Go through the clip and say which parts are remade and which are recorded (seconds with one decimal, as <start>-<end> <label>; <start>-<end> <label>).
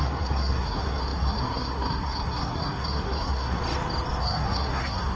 0.0-3.6 remade; 3.6-4.2 recorded; 4.2-5.2 remade